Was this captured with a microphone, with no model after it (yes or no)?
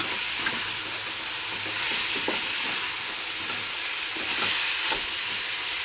no